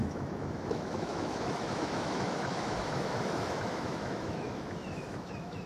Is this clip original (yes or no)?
no